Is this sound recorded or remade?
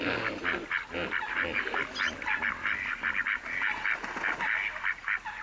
recorded